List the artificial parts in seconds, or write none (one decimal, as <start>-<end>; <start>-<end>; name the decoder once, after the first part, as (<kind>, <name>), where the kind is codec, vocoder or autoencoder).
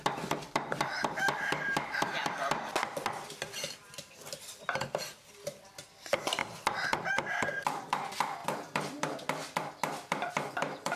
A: 0.0-6.4 (vocoder, BigVGAN v2); 7.3-11.0